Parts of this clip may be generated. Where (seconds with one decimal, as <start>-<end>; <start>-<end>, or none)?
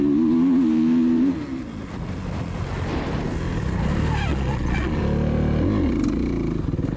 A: 4.3-5.0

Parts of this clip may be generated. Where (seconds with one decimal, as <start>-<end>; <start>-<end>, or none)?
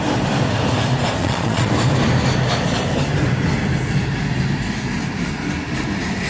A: 1.2-1.7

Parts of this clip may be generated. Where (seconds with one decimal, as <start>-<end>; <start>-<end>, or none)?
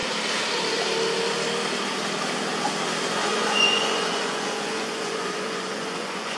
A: 3.1-6.4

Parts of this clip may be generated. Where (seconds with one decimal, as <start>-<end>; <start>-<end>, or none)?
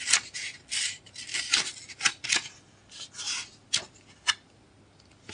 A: none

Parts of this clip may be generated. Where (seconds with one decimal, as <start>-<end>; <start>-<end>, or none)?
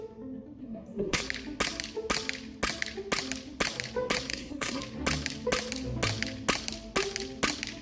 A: 0.6-1.2; 4.3-4.8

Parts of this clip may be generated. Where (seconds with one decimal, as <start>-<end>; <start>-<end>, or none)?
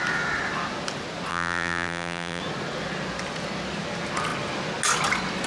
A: 1.3-2.4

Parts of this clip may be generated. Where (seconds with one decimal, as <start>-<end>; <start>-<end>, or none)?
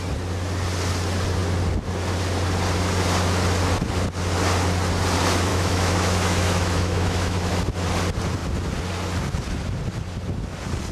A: 5.5-7.5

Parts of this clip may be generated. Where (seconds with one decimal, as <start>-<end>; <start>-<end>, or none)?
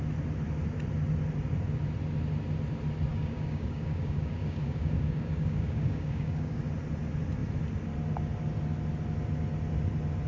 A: 3.1-6.6